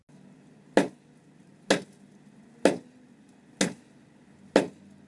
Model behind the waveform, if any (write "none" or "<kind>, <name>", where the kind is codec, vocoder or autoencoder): none